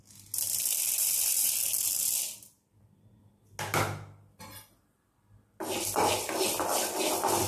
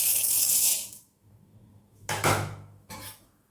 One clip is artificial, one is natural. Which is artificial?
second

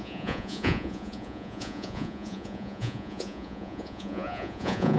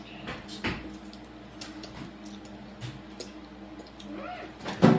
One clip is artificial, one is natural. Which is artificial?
first